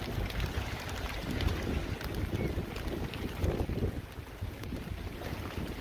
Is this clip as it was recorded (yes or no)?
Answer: yes